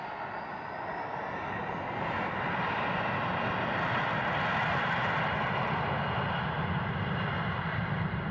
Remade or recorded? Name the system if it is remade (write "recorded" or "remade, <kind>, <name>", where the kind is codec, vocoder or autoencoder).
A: recorded